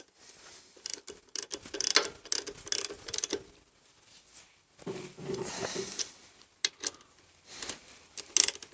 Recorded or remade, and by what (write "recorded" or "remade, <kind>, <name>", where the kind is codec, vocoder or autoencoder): recorded